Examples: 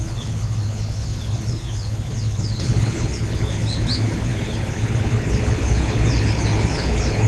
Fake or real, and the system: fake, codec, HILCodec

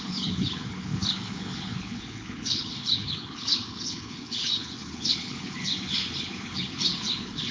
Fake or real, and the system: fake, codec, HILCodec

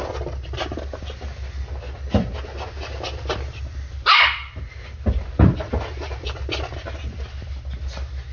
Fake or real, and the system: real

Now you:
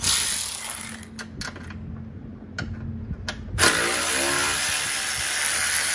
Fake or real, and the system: real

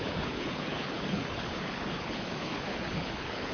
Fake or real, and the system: fake, codec, HILCodec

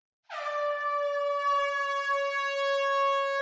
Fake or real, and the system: real